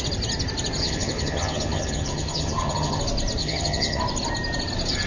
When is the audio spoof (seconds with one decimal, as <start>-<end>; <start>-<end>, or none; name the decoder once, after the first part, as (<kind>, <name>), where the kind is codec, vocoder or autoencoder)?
0.8-3.0 (vocoder, HiFi-GAN); 3.4-4.0